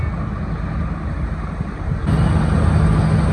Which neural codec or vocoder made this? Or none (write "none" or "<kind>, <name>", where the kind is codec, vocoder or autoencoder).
none